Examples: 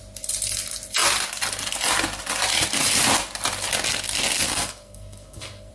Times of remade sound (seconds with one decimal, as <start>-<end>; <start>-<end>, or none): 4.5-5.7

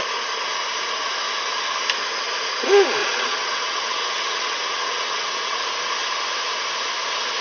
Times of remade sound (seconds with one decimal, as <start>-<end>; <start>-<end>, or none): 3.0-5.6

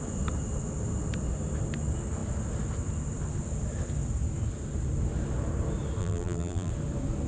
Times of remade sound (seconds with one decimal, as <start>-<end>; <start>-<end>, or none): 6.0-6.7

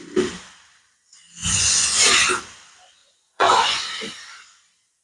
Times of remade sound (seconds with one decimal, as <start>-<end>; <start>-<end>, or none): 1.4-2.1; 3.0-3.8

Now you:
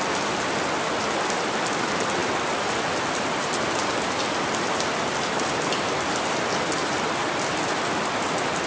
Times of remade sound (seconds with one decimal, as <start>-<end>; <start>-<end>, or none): none

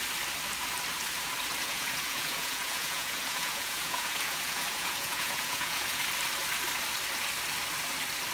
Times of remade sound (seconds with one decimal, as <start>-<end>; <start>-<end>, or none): 1.6-6.0